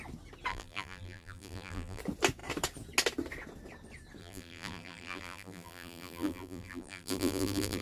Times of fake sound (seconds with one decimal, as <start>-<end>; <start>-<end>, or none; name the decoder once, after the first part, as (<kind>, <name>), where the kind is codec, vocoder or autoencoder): 0.5-2.0 (vocoder, BigVGAN v2); 4.2-7.8